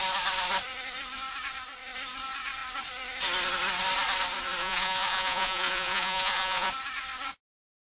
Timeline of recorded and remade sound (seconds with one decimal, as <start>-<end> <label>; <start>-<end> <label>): 0.0-4.6 recorded; 4.6-6.7 remade; 6.7-7.9 recorded